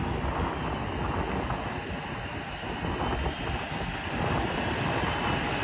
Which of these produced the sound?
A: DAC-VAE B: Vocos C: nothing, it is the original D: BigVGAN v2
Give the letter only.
C